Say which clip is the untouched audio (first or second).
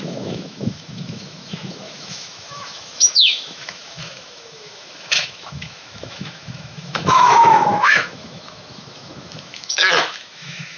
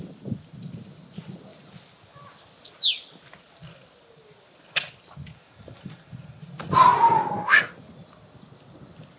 second